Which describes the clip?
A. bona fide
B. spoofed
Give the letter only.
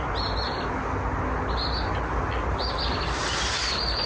A